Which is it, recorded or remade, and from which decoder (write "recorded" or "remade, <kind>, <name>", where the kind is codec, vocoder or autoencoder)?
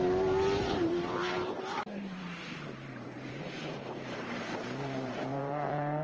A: remade, vocoder, BigVGAN v2